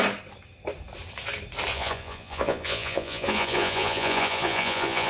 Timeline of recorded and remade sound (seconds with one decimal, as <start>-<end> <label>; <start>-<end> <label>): 0.0-1.7 recorded; 1.7-5.1 remade